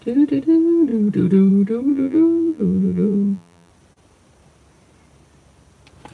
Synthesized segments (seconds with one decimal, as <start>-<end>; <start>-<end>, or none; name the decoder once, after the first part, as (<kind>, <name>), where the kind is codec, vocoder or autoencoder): 1.9-3.7 (vocoder, BigVGAN v2)